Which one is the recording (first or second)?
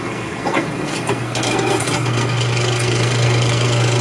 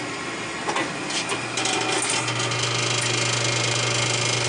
second